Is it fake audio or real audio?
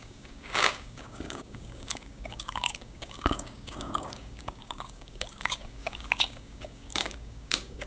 fake